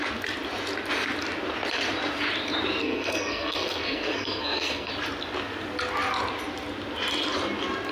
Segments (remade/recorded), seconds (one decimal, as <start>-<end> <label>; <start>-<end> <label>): 0.0-2.8 recorded; 2.8-4.9 remade; 4.9-7.9 recorded